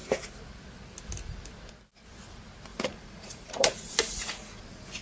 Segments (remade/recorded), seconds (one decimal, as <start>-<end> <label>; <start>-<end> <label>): 0.0-2.7 recorded; 2.7-4.6 remade; 4.6-5.0 recorded